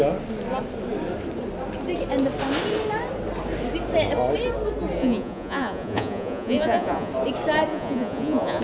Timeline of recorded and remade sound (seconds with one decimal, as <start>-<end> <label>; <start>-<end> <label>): 0.0-5.0 recorded; 5.0-7.1 remade; 7.1-7.7 recorded; 7.7-8.6 remade